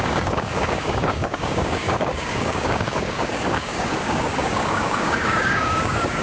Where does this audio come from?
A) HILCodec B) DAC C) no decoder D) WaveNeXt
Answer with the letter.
B